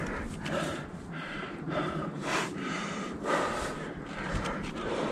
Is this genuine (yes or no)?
no